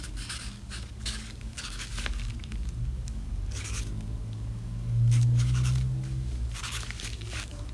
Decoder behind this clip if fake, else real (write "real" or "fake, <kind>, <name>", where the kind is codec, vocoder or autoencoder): fake, codec, DAC